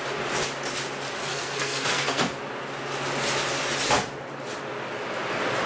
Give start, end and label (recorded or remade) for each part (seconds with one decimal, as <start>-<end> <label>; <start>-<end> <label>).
0.0-1.3 recorded; 1.3-2.4 remade; 2.4-5.7 recorded